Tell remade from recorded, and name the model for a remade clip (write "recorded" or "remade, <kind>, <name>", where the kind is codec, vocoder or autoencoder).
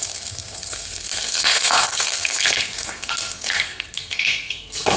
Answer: remade, codec, SNAC